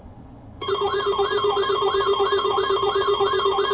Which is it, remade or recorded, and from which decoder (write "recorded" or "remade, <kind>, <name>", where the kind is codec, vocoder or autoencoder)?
remade, vocoder, Vocos